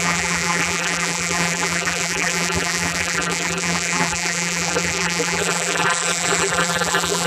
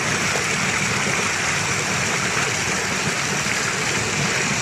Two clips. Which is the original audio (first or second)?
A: second